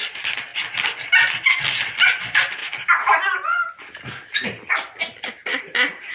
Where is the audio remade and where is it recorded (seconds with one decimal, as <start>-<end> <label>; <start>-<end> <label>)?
0.0-6.1 recorded

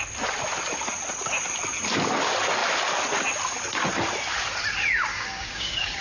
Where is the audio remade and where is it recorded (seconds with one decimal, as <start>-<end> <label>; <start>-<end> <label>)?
0.0-5.1 recorded; 5.1-6.0 remade